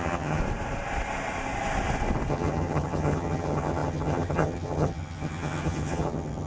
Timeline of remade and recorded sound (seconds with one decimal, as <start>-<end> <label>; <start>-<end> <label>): 0.0-0.4 remade; 0.4-2.3 recorded; 2.3-6.5 remade